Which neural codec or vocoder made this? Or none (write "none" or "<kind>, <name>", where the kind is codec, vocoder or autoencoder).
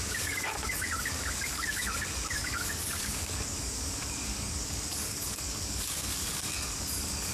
codec, DAC